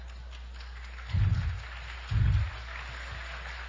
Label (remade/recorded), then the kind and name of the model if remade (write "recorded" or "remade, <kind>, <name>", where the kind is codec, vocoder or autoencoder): recorded